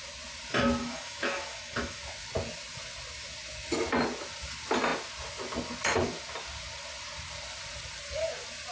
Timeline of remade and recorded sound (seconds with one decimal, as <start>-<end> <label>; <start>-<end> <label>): 0.0-0.8 recorded; 0.8-2.0 remade; 2.0-8.7 recorded